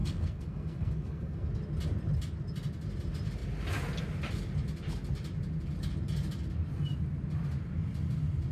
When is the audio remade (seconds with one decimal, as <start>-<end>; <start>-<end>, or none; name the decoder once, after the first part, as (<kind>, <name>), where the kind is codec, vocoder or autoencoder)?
0.0-1.5 (codec, SNAC)